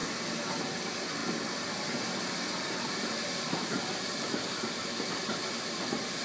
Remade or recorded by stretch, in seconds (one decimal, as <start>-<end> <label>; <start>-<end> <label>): 0.0-0.6 recorded; 0.6-6.2 remade